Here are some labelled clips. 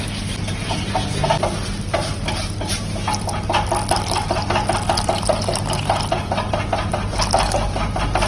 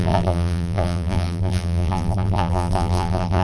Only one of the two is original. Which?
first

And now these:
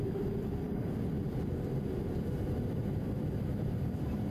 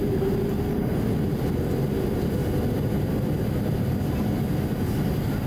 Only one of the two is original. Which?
second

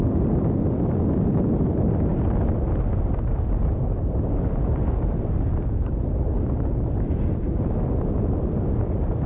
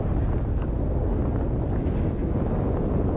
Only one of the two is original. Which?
second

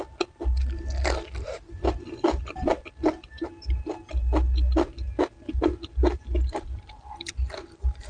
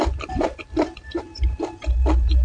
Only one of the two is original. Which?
first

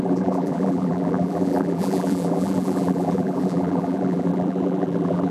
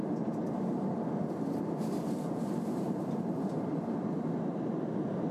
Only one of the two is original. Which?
second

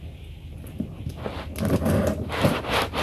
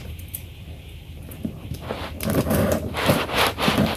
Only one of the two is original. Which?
first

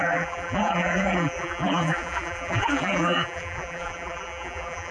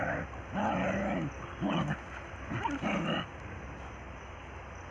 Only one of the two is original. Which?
second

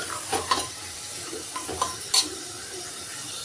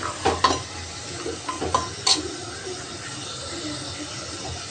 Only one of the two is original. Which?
second